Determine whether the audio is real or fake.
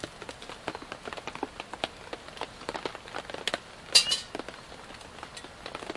real